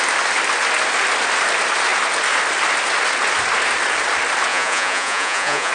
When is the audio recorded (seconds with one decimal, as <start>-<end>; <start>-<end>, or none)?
0.0-4.5